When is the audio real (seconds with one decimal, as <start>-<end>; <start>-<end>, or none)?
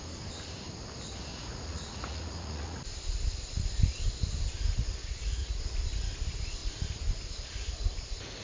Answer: 0.0-1.3; 2.8-5.0; 5.6-8.4